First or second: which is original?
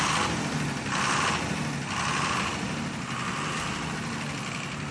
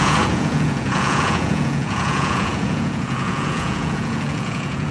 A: first